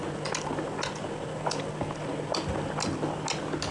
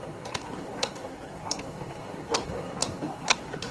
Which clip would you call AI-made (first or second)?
second